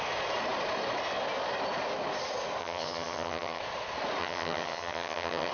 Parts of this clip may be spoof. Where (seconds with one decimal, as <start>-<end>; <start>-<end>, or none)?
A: 2.6-3.6; 4.2-5.5